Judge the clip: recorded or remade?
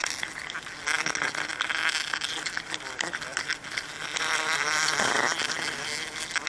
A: recorded